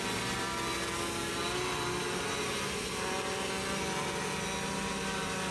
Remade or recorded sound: recorded